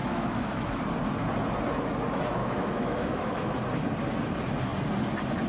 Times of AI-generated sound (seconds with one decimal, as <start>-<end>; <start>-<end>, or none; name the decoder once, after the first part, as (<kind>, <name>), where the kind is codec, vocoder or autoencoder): 0.0-0.8 (autoencoder, DAC-VAE); 2.4-3.5